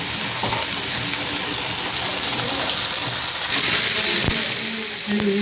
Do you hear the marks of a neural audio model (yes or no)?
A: no